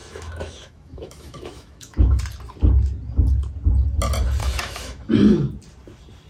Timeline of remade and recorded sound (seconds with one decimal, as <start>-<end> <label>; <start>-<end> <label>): 0.0-2.2 remade; 2.2-4.4 recorded; 4.4-5.1 remade; 5.1-6.3 recorded